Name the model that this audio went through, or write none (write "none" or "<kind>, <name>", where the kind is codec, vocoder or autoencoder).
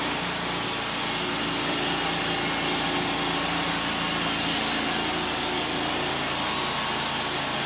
none